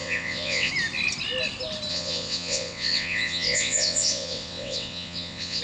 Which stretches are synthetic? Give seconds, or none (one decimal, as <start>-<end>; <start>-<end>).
0.0-0.7; 1.9-5.6

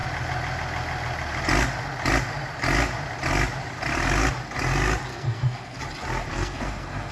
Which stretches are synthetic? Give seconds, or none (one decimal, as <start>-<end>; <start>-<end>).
5.1-5.8; 6.3-7.1